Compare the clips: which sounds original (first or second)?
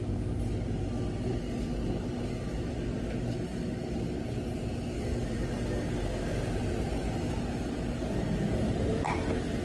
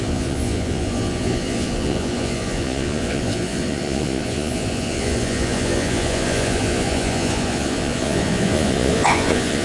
first